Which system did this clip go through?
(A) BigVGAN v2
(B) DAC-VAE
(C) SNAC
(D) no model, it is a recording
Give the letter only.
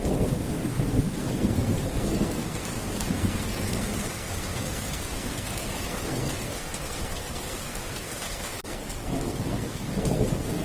C